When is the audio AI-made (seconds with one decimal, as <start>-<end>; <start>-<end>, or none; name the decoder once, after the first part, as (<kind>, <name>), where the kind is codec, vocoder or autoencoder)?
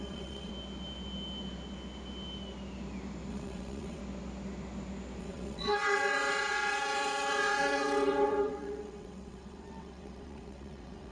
0.0-0.5 (vocoder, WaveNeXt); 3.3-4.0; 5.2-11.1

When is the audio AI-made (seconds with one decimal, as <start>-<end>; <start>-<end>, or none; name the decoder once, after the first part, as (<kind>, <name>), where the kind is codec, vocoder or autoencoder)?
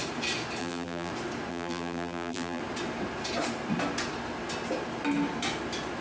0.6-1.1 (vocoder, BigVGAN v2); 1.5-2.6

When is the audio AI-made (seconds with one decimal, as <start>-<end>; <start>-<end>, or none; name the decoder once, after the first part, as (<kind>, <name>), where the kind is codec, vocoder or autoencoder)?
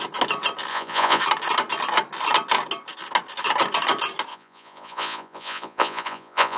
0.7-1.2 (vocoder, Vocos); 4.3-6.6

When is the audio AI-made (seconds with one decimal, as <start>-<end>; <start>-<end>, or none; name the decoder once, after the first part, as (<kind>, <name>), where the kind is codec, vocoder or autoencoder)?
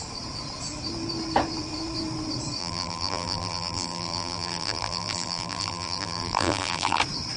2.6-7.0 (vocoder, BigVGAN v2)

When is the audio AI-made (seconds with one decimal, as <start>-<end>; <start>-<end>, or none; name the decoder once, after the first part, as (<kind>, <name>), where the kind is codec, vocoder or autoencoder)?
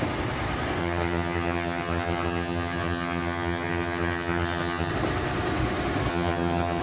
0.8-4.9 (vocoder, HiFi-GAN); 6.1-6.8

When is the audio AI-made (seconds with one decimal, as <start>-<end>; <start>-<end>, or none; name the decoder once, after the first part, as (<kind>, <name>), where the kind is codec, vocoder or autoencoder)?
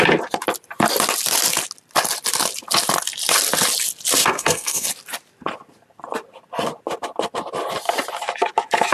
4.2-4.9 (codec, SNAC)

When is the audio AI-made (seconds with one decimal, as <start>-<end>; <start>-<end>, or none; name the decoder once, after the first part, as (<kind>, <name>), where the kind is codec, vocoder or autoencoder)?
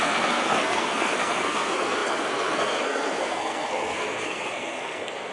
0.0-5.3 (codec, SNAC)